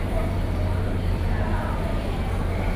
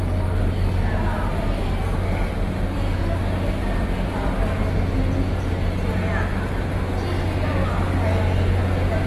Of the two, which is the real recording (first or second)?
second